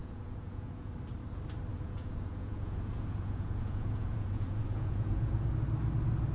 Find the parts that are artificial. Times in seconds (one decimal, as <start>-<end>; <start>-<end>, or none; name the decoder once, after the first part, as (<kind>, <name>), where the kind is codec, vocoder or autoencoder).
0.0-0.9 (vocoder, Vocos); 1.7-5.5